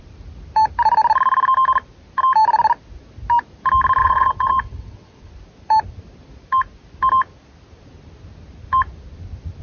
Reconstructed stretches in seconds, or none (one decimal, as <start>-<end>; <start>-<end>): 4.0-5.3